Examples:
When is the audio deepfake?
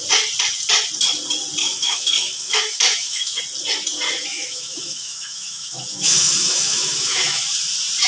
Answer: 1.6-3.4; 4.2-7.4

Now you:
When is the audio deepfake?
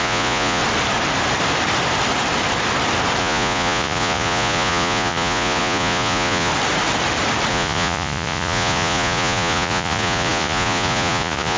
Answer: 0.0-0.6; 3.2-6.5; 7.5-11.6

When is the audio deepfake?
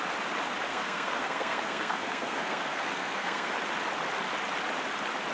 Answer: 0.7-3.5